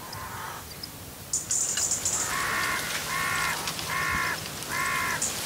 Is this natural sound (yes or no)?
yes